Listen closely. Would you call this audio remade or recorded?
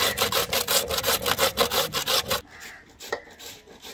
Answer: recorded